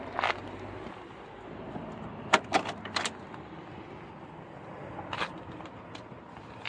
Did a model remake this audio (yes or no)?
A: no